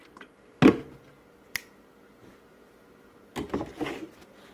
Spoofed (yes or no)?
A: no